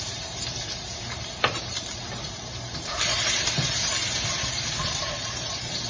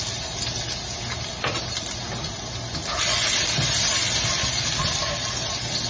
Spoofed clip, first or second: first